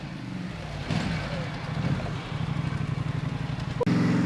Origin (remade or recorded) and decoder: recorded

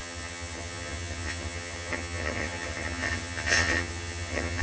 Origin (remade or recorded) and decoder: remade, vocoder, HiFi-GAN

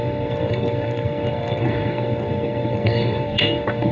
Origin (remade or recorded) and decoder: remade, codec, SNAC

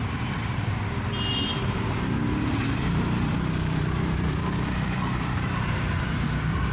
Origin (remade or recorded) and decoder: remade, vocoder, BigVGAN v2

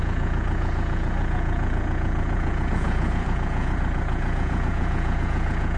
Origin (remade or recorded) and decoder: remade, vocoder, Vocos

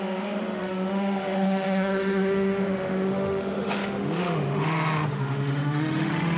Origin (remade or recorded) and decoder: remade, autoencoder, DAC-VAE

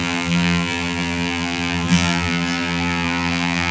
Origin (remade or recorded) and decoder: remade, vocoder, BigVGAN v2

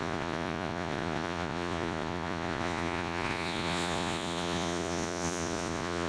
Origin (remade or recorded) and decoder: remade, vocoder, Vocos